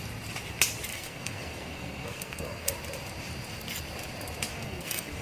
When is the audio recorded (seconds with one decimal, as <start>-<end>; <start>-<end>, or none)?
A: 0.0-0.9; 2.7-4.5